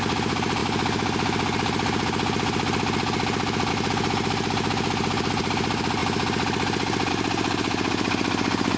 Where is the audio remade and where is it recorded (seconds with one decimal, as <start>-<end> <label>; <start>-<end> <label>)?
0.0-8.8 recorded